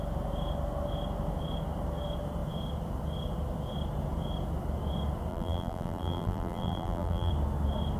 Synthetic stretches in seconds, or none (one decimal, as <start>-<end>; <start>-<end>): 5.3-7.3